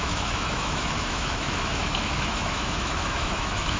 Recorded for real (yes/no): no